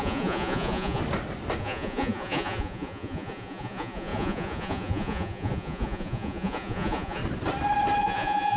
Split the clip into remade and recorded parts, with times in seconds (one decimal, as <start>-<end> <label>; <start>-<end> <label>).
0.0-1.0 remade; 1.0-1.6 recorded; 1.6-7.2 remade; 7.2-8.0 recorded; 8.0-8.6 remade